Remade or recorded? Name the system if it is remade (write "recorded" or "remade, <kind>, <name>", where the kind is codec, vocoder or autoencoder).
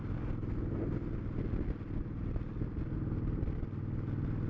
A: recorded